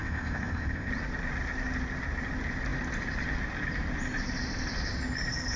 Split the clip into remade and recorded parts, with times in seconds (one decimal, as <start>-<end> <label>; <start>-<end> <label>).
0.0-0.9 remade; 0.9-5.6 recorded